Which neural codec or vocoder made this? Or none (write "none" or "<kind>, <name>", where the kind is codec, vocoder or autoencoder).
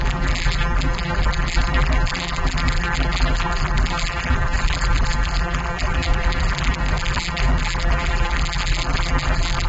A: vocoder, BigVGAN v2